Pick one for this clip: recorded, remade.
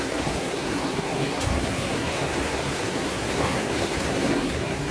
remade